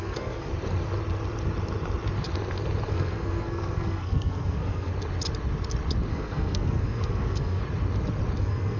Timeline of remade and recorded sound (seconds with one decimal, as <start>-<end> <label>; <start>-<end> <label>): 0.0-0.5 remade; 0.5-2.9 recorded; 2.9-4.9 remade; 4.9-6.1 recorded; 6.1-7.6 remade; 7.6-8.4 recorded; 8.4-8.8 remade